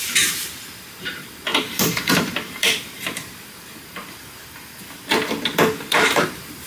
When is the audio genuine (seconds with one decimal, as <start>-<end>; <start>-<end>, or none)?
4.0-5.8